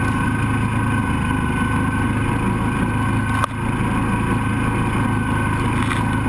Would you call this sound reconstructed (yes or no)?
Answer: no